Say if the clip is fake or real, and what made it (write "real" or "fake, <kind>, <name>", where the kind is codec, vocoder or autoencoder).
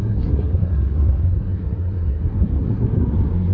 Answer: fake, codec, SNAC